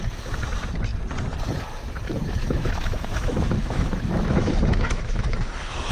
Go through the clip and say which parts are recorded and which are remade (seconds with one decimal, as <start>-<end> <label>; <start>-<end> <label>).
0.0-2.4 recorded; 2.4-5.9 remade